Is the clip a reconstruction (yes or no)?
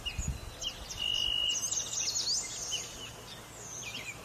no